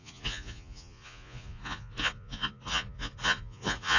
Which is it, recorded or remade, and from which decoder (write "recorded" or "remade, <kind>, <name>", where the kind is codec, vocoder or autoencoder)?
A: remade, vocoder, Vocos